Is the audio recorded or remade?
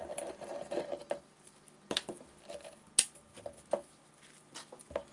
recorded